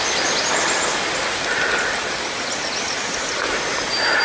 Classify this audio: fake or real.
real